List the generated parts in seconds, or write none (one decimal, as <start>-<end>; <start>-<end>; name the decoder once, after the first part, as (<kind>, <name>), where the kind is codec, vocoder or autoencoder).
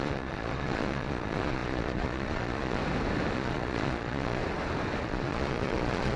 0.0-2.8 (vocoder, Vocos); 3.3-4.4; 5.0-6.2